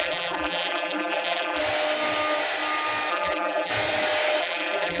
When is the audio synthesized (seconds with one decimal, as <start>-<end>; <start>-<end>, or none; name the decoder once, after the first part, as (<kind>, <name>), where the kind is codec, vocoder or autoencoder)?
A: 0.0-1.6 (vocoder, BigVGAN v2); 3.1-3.7; 4.4-5.0